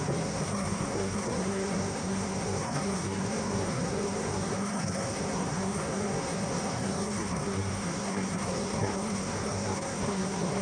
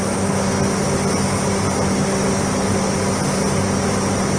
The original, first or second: second